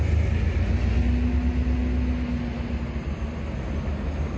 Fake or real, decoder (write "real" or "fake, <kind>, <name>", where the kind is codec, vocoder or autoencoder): real